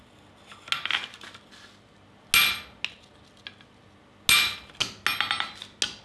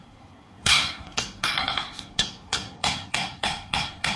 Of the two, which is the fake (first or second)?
second